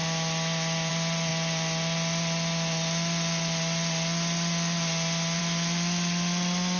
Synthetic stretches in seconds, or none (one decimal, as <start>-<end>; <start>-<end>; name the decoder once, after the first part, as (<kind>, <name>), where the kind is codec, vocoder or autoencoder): none